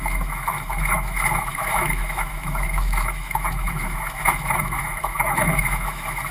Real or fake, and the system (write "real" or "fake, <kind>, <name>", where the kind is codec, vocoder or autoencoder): fake, autoencoder, DAC-VAE